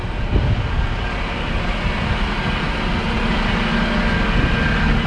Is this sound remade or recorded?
recorded